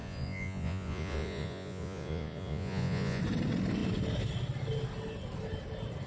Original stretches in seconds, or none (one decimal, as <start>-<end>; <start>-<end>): 3.2-6.1

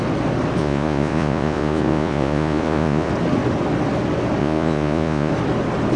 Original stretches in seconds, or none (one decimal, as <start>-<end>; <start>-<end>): 0.0-0.6; 3.1-4.4; 5.3-6.0

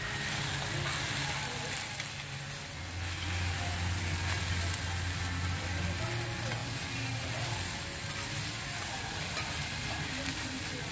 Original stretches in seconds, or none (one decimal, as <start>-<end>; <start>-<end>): 0.0-10.9